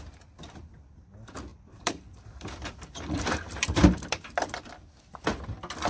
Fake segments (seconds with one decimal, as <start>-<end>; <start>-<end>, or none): 1.5-4.7